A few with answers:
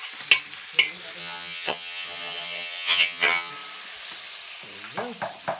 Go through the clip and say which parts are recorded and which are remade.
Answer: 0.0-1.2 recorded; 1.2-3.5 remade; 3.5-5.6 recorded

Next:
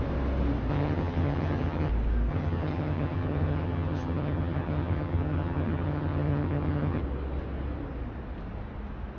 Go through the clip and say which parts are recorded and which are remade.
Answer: 0.0-0.7 recorded; 0.7-1.9 remade; 1.9-2.3 recorded; 2.3-7.0 remade; 7.0-9.2 recorded

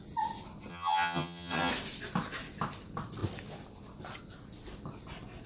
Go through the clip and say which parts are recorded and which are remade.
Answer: 0.0-0.7 recorded; 0.7-1.7 remade; 1.7-5.5 recorded

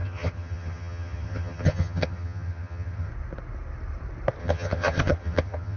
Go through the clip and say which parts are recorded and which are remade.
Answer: 0.0-3.1 remade; 3.1-4.4 recorded; 4.4-5.8 remade

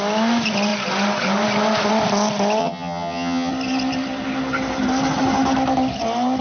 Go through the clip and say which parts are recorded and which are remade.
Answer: 0.0-2.6 recorded; 2.6-3.5 remade; 3.5-6.4 recorded